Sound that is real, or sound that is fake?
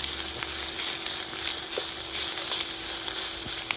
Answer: real